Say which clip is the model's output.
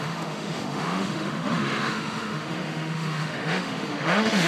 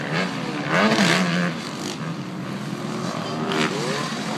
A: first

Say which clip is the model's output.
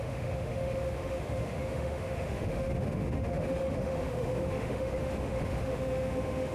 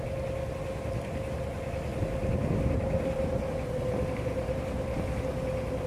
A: first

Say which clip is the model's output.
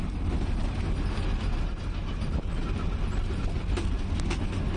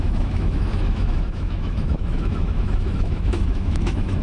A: second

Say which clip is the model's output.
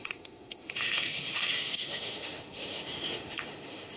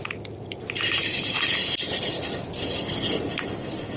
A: first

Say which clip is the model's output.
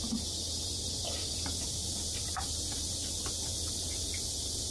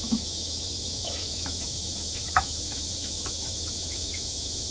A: second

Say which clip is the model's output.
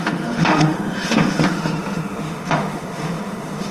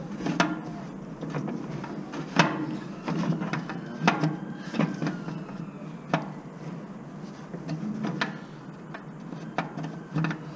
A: first